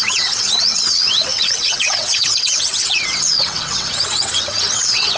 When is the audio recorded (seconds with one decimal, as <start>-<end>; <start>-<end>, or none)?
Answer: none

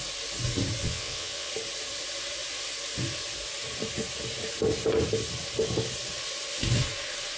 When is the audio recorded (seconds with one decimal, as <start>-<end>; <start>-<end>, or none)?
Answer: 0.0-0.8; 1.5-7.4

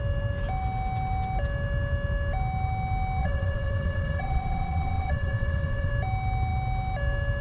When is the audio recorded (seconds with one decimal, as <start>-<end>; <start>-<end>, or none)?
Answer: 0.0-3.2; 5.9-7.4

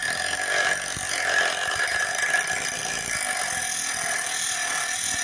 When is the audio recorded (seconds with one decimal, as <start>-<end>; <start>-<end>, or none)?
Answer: 0.0-5.2